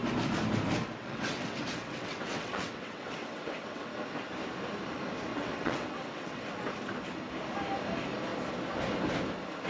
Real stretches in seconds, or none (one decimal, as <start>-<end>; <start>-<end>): 0.0-1.0; 3.9-5.3; 6.4-9.7